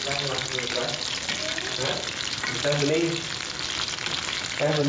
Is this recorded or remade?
recorded